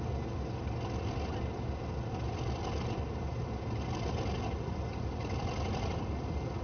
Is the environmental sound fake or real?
real